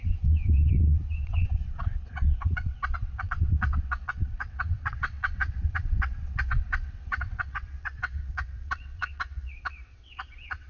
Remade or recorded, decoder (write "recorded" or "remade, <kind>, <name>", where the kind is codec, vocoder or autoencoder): remade, vocoder, WaveNeXt